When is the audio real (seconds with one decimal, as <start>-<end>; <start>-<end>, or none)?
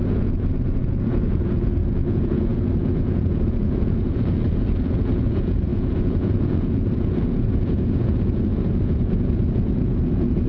none